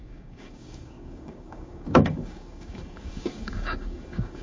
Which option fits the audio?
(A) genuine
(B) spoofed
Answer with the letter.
B